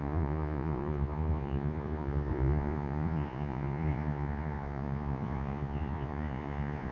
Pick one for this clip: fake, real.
fake